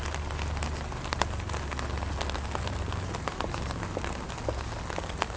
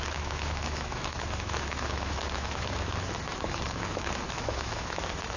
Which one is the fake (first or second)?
second